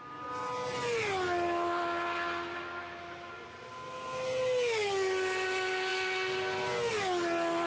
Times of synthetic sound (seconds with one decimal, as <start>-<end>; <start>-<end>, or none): none